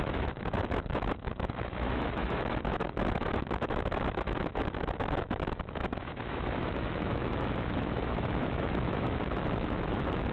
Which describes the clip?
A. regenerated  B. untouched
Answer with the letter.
A